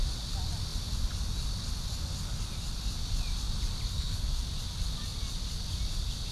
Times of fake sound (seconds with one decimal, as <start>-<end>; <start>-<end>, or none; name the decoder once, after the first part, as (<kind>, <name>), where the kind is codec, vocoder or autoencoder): 3.9-4.4 (codec, SNAC)

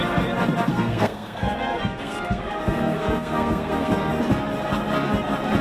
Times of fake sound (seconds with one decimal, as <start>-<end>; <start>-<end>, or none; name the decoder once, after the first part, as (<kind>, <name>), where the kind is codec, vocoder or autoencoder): 0.7-4.1 (codec, SNAC)

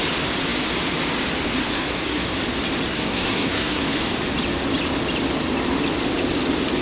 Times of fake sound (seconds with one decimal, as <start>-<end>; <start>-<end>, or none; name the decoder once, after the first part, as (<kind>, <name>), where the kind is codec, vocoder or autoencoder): 1.6-2.4 (codec, SNAC); 2.9-3.8

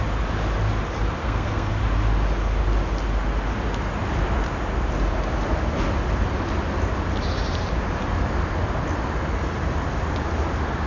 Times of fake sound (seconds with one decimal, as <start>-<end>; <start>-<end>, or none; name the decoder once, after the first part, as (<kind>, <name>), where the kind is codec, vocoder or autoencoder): 1.2-1.7 (codec, SNAC)

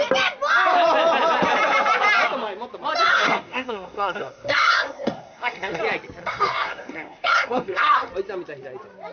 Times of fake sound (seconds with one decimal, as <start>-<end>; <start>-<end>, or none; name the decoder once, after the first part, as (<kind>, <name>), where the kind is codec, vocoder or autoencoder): 3.1-5.8 (codec, SNAC); 6.2-8.1